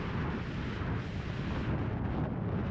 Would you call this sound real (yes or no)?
yes